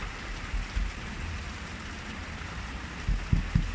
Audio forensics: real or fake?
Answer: real